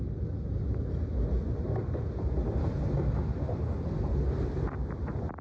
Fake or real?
real